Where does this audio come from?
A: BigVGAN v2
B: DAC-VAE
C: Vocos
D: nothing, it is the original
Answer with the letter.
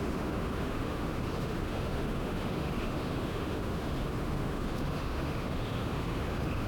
B